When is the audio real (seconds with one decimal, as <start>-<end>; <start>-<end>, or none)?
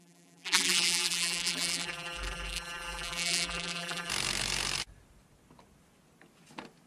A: 4.1-6.9